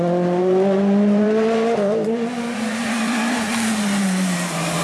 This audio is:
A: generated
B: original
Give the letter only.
A